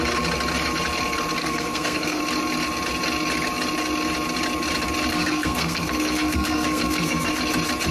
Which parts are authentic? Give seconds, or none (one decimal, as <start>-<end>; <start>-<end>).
0.0-1.4; 2.2-5.1; 7.3-7.9